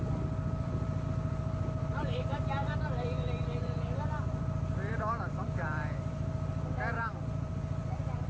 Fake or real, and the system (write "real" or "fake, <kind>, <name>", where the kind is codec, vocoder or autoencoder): fake, vocoder, BigVGAN v2